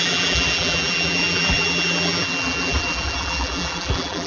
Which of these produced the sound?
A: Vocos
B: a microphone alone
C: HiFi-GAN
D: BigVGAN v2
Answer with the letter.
D